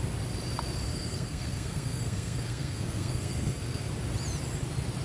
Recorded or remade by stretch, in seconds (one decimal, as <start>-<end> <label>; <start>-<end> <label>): 0.0-0.9 recorded; 0.9-3.9 remade; 3.9-5.0 recorded